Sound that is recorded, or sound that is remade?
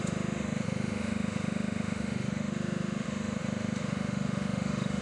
remade